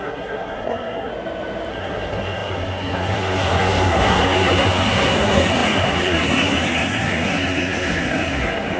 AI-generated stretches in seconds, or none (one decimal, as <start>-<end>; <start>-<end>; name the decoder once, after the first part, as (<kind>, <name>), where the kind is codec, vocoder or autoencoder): 0.0-1.1 (codec, SNAC); 1.7-8.8